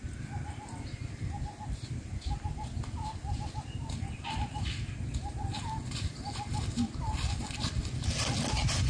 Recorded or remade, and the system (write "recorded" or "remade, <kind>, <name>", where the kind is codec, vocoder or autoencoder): recorded